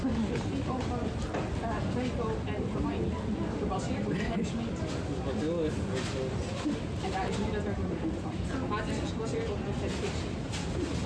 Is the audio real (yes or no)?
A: yes